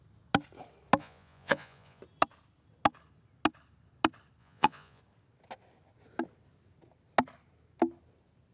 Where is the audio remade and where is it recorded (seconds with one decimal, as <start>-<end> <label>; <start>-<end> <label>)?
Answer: 0.0-1.0 recorded; 1.0-2.0 remade; 2.0-4.4 recorded; 4.4-5.0 remade; 5.0-8.5 recorded